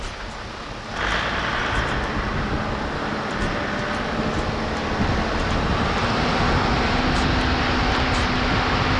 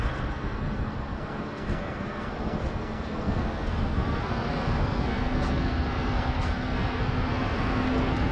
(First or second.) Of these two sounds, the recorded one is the first